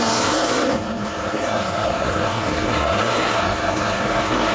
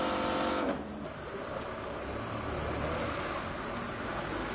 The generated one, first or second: first